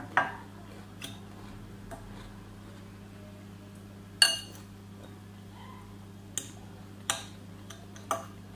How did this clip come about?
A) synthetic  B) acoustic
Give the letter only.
B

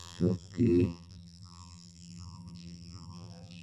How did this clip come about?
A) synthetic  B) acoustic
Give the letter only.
A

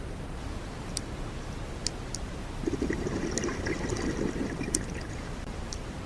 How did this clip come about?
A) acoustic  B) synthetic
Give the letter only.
A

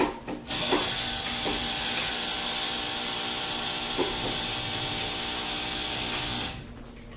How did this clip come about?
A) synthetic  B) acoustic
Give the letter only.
B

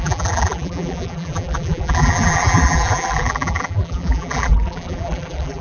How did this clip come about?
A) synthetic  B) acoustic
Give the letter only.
A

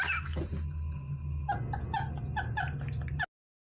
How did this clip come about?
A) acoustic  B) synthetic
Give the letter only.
A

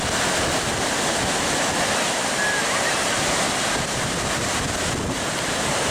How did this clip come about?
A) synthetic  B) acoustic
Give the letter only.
B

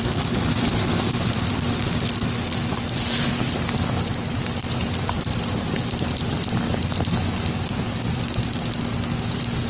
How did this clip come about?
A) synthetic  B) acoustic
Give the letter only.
B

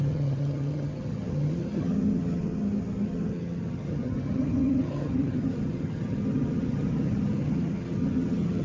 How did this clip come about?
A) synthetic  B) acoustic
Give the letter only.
A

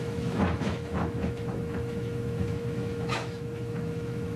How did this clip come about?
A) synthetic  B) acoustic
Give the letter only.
A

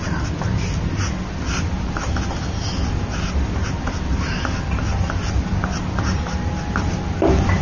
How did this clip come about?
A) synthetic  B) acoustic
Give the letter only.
B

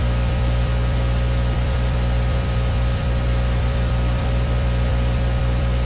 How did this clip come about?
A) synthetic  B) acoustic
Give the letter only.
A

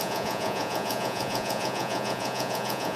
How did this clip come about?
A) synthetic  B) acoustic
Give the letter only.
A